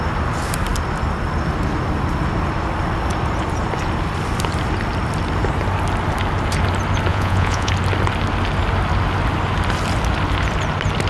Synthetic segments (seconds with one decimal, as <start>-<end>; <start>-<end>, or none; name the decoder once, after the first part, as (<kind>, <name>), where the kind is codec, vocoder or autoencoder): 7.1-7.7 (vocoder, Vocos)